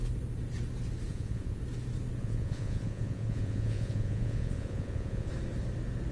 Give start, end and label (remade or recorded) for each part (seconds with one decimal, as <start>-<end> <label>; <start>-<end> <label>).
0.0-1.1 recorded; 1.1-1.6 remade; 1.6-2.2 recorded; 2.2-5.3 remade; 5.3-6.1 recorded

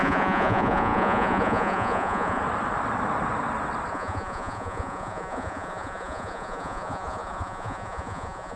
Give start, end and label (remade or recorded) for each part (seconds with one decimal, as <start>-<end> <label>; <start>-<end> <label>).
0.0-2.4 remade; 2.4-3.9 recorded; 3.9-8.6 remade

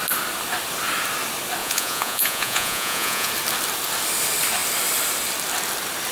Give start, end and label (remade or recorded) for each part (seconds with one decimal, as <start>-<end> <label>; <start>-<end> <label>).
0.0-1.6 recorded; 1.6-3.3 remade; 3.3-6.1 recorded

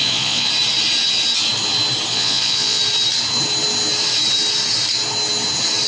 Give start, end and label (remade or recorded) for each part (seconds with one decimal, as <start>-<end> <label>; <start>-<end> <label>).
0.0-0.5 remade; 0.5-2.1 recorded; 2.1-2.8 remade; 2.8-5.9 recorded

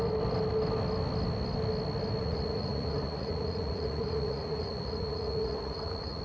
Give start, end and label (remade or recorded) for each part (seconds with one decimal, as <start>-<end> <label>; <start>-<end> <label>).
0.0-2.2 recorded; 2.2-6.2 remade

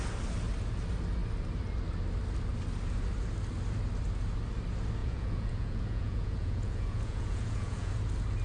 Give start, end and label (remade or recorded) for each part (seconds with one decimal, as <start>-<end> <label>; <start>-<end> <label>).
0.0-5.0 recorded; 5.0-7.9 remade; 7.9-8.4 recorded

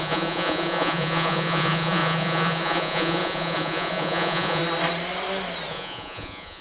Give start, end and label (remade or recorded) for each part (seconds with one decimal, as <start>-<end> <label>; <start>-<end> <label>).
0.0-4.6 remade; 4.6-5.7 recorded; 5.7-6.6 remade